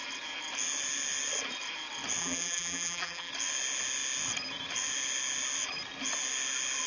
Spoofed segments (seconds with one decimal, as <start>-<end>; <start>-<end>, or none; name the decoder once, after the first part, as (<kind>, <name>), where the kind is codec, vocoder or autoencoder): 2.2-3.3 (vocoder, BigVGAN v2)